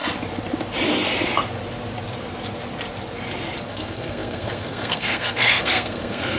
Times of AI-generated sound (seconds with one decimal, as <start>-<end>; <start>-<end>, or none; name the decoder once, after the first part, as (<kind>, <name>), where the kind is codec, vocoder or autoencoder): 3.7-6.4 (codec, SNAC)

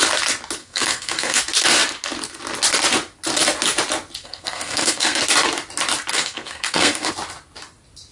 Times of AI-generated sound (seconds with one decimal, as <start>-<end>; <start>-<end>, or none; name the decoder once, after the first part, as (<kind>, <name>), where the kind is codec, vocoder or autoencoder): 0.6-1.4 (codec, SNAC); 4.2-5.2; 6.1-7.1